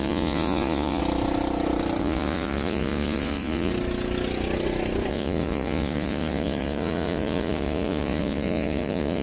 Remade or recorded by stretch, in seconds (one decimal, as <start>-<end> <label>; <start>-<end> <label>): 0.0-1.0 remade; 1.0-2.0 recorded; 2.0-3.7 remade; 3.7-5.1 recorded; 5.1-9.2 remade

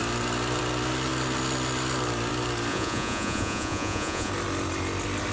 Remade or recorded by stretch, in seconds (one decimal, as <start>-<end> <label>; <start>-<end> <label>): 0.0-2.7 recorded; 2.7-4.3 remade; 4.3-5.3 recorded

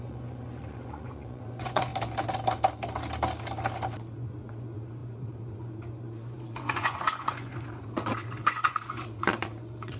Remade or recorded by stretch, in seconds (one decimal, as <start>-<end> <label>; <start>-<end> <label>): 0.0-1.9 remade; 1.9-4.1 recorded; 4.1-10.0 remade